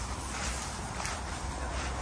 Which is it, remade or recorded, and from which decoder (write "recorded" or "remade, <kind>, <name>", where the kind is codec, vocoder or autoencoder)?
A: recorded